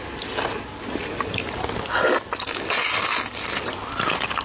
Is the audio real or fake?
real